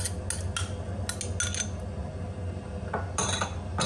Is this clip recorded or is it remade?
recorded